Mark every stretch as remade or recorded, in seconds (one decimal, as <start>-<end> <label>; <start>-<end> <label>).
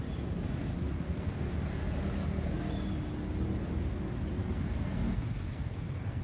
0.0-0.6 recorded; 0.6-1.3 remade; 1.3-4.4 recorded; 4.4-6.2 remade